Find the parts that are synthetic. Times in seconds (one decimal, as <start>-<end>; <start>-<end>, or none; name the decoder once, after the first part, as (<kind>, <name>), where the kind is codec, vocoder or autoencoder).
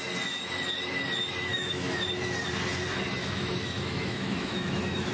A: 1.5-2.0 (autoencoder, DAC-VAE); 3.2-5.1